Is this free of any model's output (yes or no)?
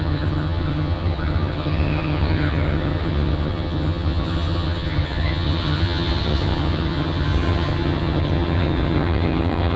no